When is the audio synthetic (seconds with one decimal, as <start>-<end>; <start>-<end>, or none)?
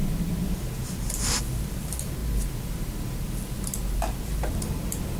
none